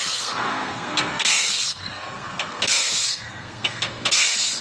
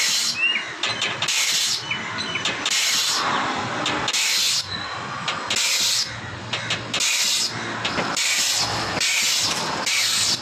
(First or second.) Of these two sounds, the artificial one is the first